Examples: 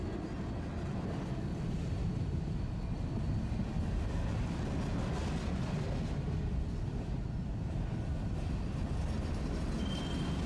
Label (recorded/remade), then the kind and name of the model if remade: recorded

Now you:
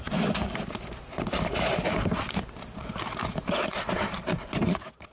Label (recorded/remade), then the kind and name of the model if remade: remade, vocoder, BigVGAN v2